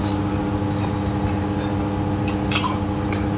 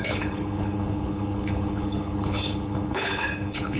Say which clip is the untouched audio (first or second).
first